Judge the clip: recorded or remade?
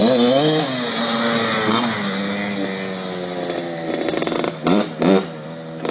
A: recorded